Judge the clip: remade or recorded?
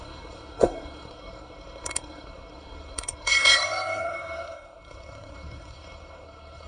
remade